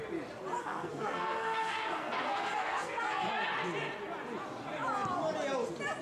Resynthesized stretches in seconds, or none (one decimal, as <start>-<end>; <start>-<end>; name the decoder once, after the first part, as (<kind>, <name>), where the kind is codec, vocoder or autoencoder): 0.6-3.3 (codec, SNAC)